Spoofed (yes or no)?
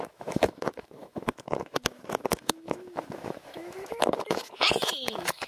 yes